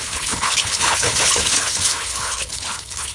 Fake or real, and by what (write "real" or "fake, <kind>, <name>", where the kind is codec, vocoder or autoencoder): fake, codec, HILCodec